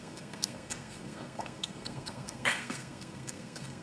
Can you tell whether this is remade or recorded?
remade